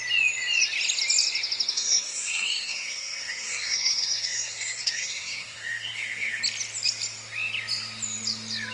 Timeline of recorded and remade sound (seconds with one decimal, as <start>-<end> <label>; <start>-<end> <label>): 0.0-1.7 recorded; 1.7-6.4 remade; 6.4-8.7 recorded

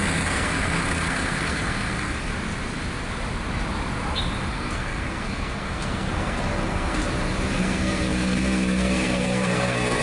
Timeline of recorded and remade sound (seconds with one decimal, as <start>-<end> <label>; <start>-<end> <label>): 0.0-2.3 remade; 2.3-4.5 recorded; 4.5-7.0 remade; 7.0-7.5 recorded; 7.5-10.0 remade

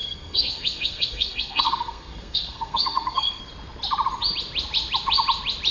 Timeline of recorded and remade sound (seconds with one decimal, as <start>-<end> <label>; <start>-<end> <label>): 0.0-3.4 remade; 3.4-5.7 recorded